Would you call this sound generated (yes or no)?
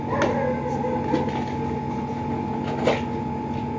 no